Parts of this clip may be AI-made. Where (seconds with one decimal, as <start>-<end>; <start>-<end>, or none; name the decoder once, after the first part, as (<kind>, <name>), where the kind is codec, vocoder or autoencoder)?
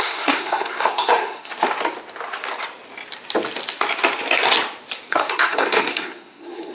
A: 0.0-1.5 (codec, SNAC); 5.1-6.7